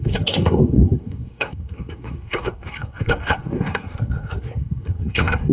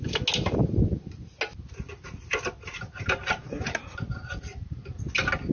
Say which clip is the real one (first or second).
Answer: second